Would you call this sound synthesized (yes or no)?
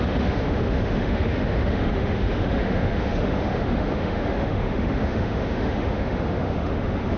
yes